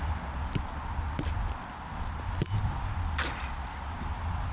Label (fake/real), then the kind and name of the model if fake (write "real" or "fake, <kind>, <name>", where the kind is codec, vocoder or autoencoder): real